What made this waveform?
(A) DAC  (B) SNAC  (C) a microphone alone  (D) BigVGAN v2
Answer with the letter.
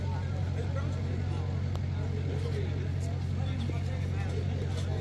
C